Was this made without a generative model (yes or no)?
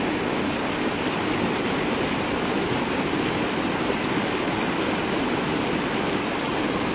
yes